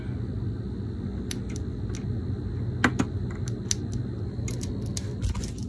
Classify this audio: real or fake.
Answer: real